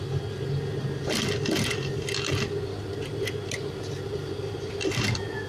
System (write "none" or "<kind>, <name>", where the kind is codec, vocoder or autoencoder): none